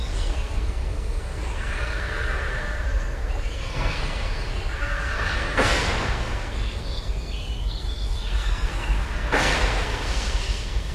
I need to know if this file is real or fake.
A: fake